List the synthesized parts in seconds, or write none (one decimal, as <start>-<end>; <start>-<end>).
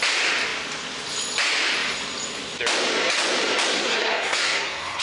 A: 3.7-5.0